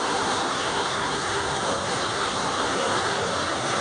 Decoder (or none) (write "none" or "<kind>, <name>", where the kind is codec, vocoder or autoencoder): codec, SNAC